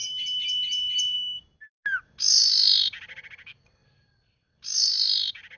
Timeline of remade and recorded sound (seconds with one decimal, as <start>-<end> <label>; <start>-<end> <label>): 0.0-5.6 recorded